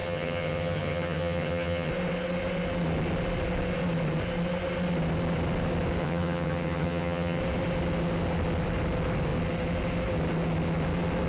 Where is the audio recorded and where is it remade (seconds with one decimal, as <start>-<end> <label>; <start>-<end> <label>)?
0.0-1.9 remade; 1.9-6.0 recorded; 6.0-7.4 remade; 7.4-11.3 recorded

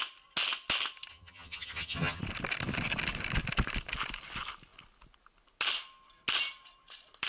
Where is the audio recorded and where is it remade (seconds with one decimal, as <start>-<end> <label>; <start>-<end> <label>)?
0.0-1.1 recorded; 1.1-2.2 remade; 2.2-7.3 recorded